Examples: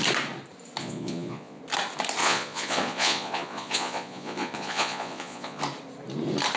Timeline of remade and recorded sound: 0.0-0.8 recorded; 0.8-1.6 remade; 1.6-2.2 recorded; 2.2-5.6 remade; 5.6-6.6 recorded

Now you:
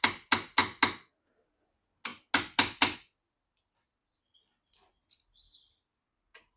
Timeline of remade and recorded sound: 0.0-6.6 recorded

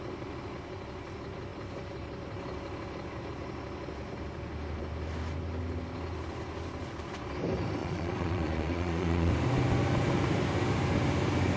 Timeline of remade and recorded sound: 0.0-7.8 recorded; 7.8-9.3 remade; 9.3-11.6 recorded

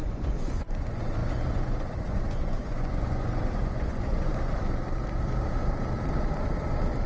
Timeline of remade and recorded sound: 0.0-4.3 remade; 4.3-7.1 recorded

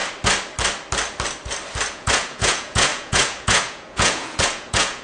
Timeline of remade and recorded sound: 0.0-1.9 recorded; 1.9-5.0 remade